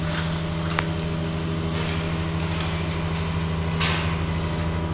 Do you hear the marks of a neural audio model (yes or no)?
no